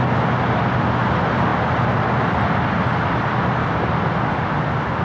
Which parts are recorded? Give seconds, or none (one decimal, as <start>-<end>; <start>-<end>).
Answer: 0.0-5.0